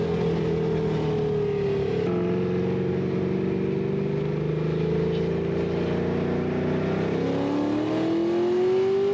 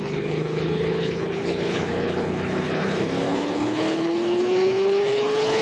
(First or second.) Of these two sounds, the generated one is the second